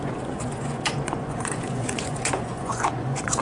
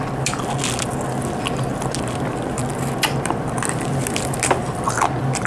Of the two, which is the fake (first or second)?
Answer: first